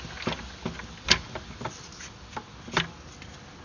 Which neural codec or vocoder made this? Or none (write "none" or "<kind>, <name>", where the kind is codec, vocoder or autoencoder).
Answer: none